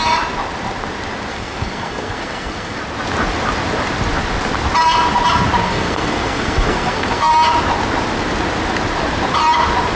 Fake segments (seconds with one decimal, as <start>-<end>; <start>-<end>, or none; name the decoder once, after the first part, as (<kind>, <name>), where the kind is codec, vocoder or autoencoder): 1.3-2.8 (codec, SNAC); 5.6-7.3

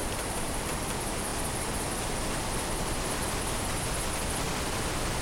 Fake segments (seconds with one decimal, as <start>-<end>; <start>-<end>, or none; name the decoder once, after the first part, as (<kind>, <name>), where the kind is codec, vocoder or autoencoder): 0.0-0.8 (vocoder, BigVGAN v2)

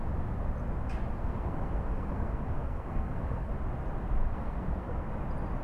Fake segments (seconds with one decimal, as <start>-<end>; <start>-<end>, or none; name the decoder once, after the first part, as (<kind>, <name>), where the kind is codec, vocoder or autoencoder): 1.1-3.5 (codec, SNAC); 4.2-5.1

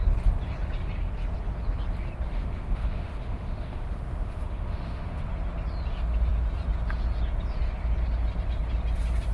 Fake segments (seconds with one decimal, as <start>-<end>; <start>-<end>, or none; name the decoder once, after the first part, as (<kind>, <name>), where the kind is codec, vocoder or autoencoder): 2.3-5.2 (autoencoder, DAC-VAE)

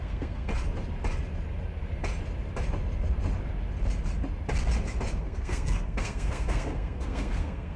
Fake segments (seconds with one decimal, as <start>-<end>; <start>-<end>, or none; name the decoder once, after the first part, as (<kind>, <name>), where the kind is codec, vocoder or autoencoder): 0.0-0.5 (codec, SNAC); 5.2-7.8

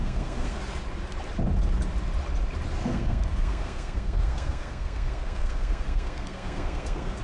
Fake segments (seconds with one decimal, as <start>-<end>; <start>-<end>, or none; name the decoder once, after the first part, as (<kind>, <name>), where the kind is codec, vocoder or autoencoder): 0.0-0.6 (codec, SNAC); 2.8-7.2

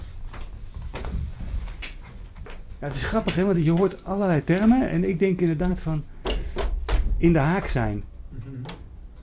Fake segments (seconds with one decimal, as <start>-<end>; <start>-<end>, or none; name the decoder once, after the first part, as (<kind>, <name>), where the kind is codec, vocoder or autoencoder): 0.9-4.4 (vocoder, Vocos); 5.1-5.7

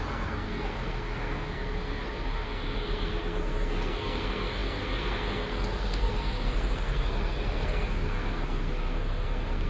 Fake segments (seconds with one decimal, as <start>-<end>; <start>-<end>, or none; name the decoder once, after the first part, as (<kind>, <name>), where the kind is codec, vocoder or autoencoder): 0.0-9.7 (codec, SNAC)